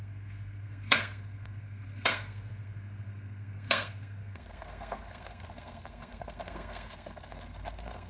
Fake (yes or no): yes